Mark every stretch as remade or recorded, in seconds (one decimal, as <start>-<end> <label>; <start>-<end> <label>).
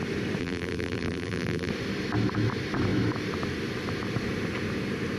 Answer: 0.0-0.4 recorded; 0.4-1.7 remade; 1.7-5.2 recorded